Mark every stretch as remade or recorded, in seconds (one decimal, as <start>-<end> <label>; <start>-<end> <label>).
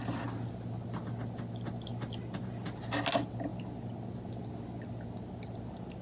0.0-1.9 recorded; 1.9-2.7 remade; 2.7-6.0 recorded